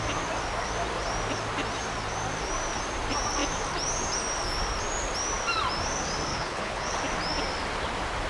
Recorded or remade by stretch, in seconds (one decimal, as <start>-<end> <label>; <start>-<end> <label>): 0.0-6.3 recorded; 6.3-7.0 remade; 7.0-8.3 recorded